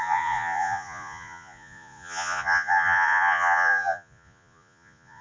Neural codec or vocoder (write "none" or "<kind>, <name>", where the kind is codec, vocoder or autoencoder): vocoder, Vocos